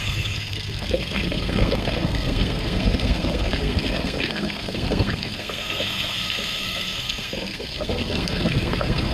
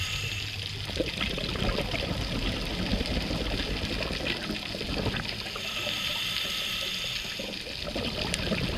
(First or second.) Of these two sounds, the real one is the second